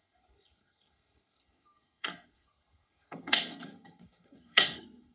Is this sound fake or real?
fake